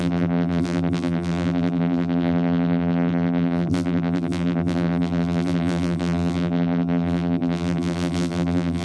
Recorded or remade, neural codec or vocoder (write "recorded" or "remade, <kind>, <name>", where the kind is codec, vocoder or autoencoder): remade, vocoder, BigVGAN v2